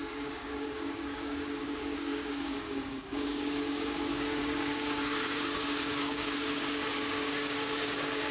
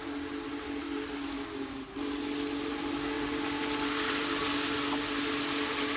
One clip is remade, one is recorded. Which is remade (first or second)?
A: first